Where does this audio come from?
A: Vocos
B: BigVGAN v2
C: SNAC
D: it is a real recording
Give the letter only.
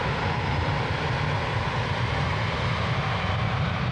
D